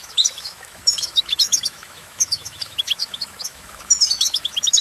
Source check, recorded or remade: remade